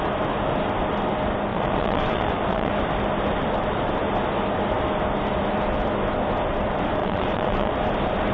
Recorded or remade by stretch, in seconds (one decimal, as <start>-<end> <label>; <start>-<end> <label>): 0.0-1.5 recorded; 1.5-2.7 remade; 2.7-7.0 recorded; 7.0-7.7 remade; 7.7-8.3 recorded